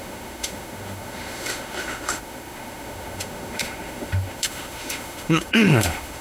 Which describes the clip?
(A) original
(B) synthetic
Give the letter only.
B